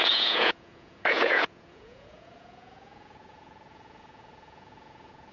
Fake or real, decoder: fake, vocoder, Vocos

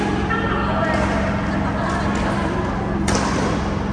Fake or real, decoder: real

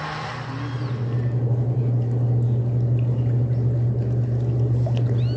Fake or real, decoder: real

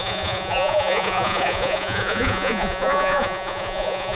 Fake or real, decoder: fake, vocoder, Vocos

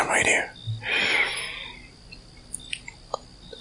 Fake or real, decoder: real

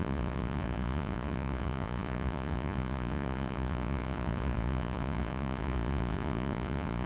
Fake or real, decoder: fake, vocoder, Vocos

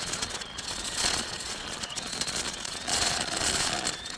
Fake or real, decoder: fake, vocoder, Vocos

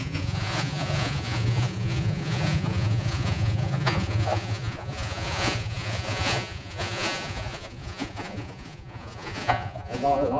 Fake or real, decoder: fake, vocoder, Vocos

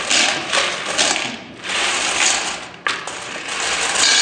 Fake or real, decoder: real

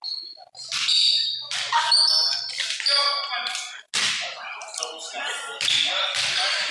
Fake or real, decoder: real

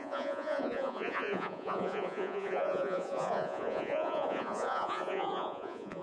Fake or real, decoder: fake, vocoder, Vocos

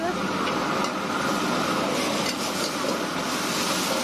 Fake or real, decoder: real